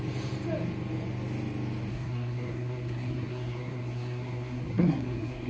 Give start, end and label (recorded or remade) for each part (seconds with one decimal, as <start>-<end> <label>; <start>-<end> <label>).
0.0-1.9 recorded; 1.9-5.5 remade

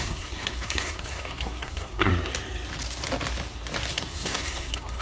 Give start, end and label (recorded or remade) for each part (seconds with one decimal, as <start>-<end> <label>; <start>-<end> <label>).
0.0-2.1 remade; 2.1-3.9 recorded; 3.9-5.0 remade

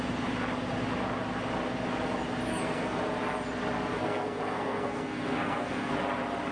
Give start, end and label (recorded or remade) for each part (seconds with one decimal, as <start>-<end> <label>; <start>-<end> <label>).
0.0-2.5 recorded; 2.5-3.0 remade; 3.0-3.9 recorded; 3.9-5.9 remade; 5.9-6.5 recorded

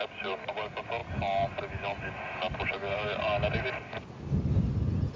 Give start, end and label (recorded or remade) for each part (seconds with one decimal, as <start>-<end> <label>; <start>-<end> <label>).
0.0-5.2 recorded

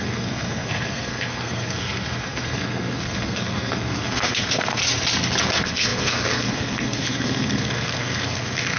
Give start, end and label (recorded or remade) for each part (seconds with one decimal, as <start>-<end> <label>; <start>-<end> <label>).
0.0-4.8 remade; 4.8-5.4 recorded; 5.4-8.8 remade